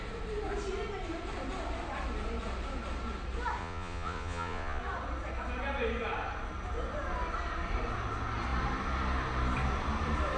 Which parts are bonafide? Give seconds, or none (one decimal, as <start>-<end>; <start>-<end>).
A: 0.0-3.6; 4.8-10.4